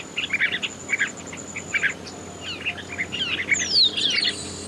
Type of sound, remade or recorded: recorded